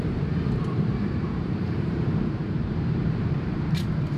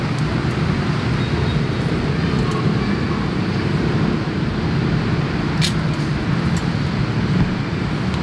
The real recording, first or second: second